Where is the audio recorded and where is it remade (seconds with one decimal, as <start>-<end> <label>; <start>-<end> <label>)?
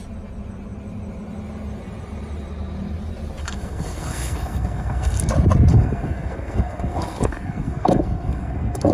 0.0-3.4 recorded; 3.4-5.3 remade; 5.3-5.7 recorded; 5.7-8.9 remade